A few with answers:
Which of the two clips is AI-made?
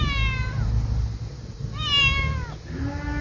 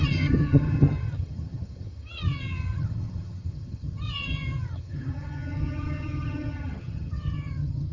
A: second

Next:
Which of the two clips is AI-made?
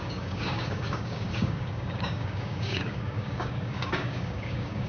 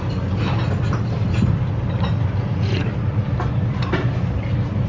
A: first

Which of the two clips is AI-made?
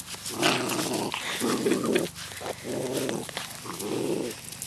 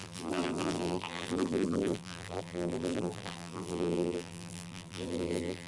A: second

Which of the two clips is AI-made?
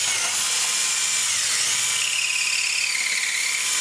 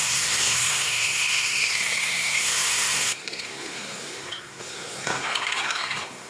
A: second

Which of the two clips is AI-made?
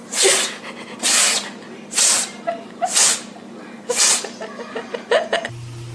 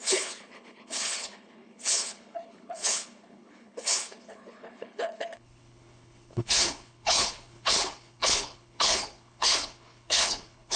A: second